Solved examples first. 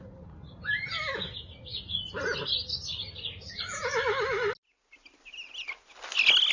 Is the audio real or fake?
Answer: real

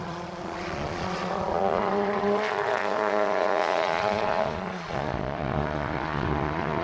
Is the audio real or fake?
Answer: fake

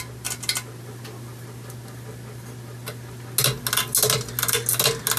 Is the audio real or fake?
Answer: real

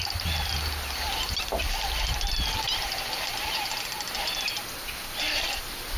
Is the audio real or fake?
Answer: real